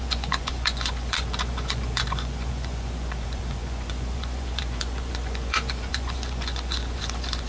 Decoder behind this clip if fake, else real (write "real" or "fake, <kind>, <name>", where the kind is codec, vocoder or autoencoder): fake, vocoder, Vocos